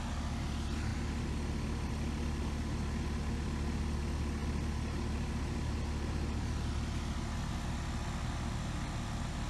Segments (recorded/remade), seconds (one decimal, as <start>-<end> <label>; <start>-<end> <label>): 0.0-9.5 recorded